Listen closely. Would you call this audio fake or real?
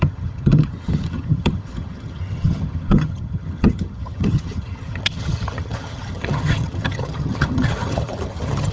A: fake